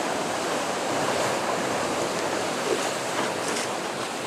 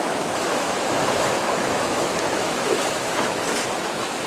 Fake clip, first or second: second